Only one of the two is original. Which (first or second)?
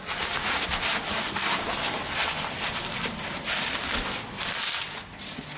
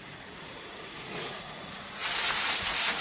first